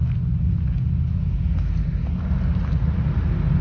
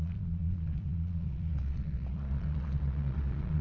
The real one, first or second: first